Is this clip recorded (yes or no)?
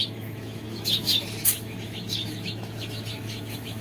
no